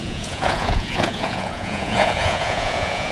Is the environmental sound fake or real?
fake